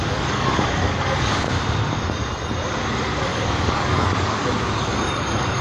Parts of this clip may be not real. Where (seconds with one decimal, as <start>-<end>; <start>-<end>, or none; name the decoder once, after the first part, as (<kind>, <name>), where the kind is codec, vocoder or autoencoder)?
0.0-1.5 (codec, DAC); 3.3-5.6